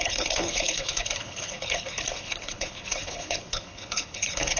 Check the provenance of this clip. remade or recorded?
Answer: remade